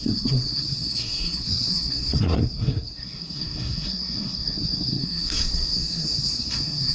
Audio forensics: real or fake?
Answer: fake